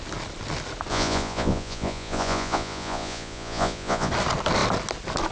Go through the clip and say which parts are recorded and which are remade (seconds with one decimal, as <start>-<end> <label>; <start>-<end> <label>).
0.0-0.9 recorded; 0.9-4.1 remade; 4.1-5.3 recorded